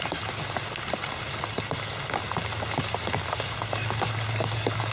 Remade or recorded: recorded